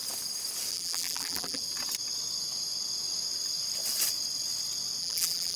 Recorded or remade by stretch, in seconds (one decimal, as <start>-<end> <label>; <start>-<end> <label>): 0.0-0.7 recorded; 0.7-1.6 remade; 1.6-5.0 recorded; 5.0-5.6 remade